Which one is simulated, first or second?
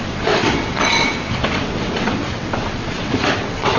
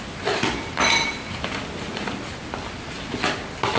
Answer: first